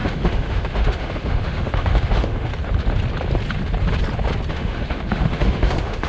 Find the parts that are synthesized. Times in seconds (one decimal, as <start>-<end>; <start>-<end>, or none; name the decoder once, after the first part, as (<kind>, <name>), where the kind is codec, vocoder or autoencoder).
0.0-2.5 (autoencoder, DAC-VAE); 4.5-6.1